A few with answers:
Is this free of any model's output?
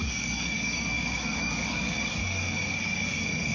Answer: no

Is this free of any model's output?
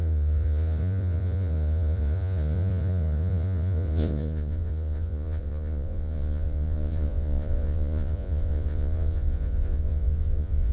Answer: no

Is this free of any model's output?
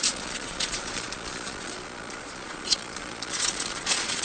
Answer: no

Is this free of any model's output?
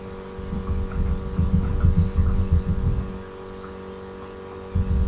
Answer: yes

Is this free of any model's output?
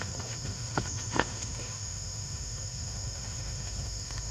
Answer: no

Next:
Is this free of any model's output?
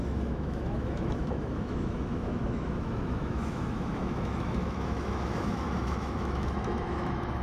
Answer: no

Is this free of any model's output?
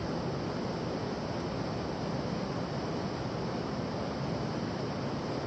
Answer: yes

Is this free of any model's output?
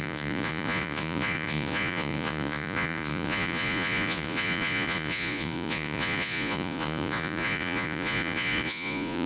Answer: no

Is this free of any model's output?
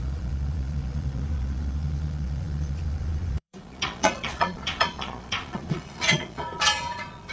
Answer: no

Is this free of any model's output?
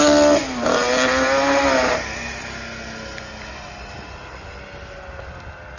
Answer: yes